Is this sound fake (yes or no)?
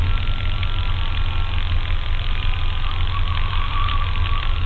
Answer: no